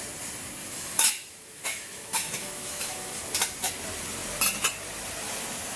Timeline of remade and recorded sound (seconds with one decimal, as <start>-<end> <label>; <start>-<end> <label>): 0.0-0.6 recorded; 0.6-3.2 remade; 3.2-5.8 recorded